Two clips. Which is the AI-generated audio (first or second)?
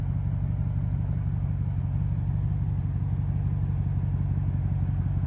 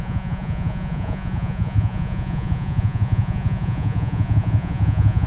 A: second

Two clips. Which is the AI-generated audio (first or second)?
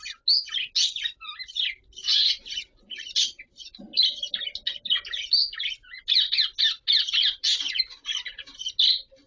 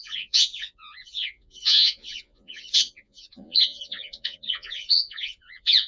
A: second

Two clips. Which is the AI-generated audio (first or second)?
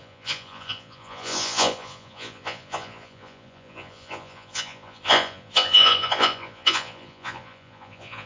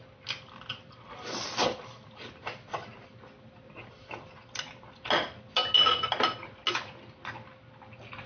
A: first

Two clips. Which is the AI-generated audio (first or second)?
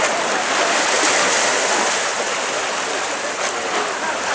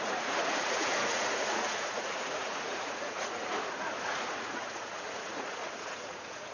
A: second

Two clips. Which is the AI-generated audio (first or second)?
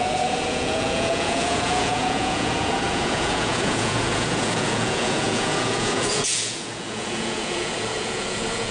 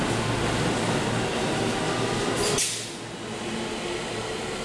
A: first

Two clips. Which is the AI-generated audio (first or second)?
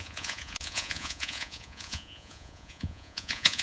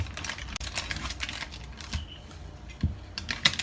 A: first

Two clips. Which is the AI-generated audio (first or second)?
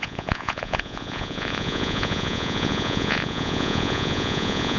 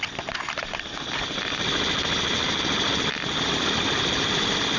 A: first